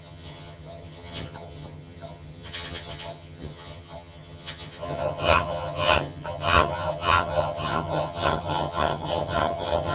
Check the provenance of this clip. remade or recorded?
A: remade